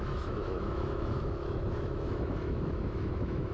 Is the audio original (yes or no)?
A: no